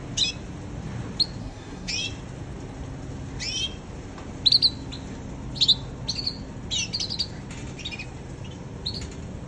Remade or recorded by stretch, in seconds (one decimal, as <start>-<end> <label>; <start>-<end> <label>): 0.0-1.4 recorded; 1.4-1.9 remade; 1.9-9.5 recorded